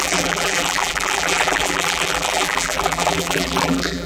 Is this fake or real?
fake